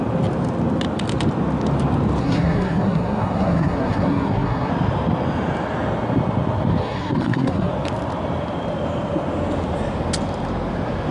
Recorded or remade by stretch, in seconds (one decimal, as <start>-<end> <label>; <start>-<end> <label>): 0.0-2.2 recorded; 2.2-4.7 remade; 4.7-6.8 recorded; 6.8-7.7 remade; 7.7-11.1 recorded